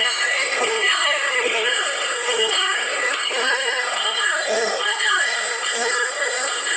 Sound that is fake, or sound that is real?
fake